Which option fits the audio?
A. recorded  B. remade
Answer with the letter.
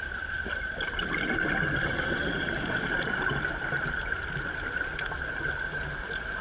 A